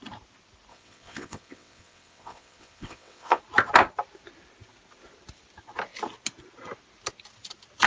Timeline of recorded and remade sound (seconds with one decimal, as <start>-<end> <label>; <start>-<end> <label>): 0.0-0.7 recorded; 0.7-3.4 remade; 3.4-7.9 recorded

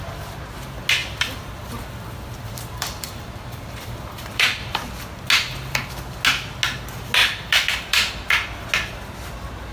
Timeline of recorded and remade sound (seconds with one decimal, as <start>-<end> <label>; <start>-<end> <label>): 0.0-1.0 recorded; 1.0-4.8 remade; 4.8-7.2 recorded; 7.2-8.1 remade; 8.1-9.7 recorded

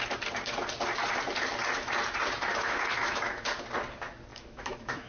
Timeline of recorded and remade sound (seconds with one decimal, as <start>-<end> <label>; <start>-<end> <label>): 0.0-2.5 recorded; 2.5-3.5 remade; 3.5-4.3 recorded; 4.3-5.1 remade

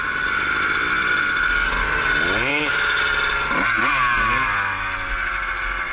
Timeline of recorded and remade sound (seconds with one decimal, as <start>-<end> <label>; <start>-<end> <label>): 0.0-2.5 recorded; 2.5-3.0 remade; 3.0-5.9 recorded

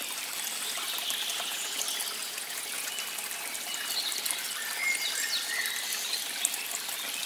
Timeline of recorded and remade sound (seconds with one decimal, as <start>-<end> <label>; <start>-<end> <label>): 0.0-1.3 recorded; 1.3-1.8 remade; 1.8-2.2 recorded; 2.2-2.9 remade; 2.9-7.3 recorded